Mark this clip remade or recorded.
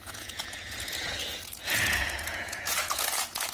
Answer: remade